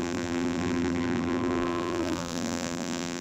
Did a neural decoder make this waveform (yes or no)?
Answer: yes